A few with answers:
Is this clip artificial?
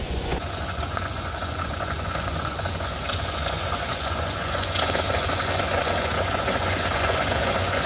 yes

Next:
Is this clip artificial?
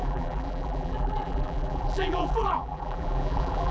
yes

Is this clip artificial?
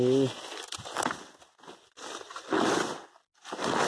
no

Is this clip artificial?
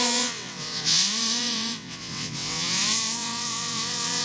yes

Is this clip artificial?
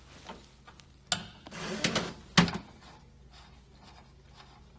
no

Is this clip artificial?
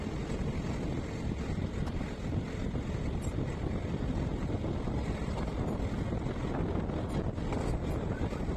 no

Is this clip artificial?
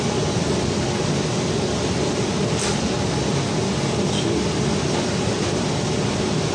no